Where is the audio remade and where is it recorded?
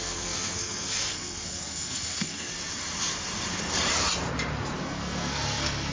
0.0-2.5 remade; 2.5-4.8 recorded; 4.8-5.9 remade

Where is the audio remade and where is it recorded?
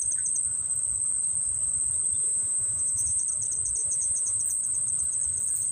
0.0-2.2 recorded; 2.2-3.2 remade; 3.2-3.8 recorded; 3.8-4.4 remade; 4.4-5.7 recorded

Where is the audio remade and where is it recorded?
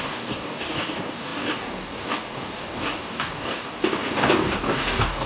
0.0-5.3 remade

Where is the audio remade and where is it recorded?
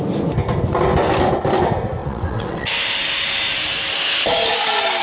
0.0-2.0 recorded; 2.0-2.7 remade; 2.7-5.0 recorded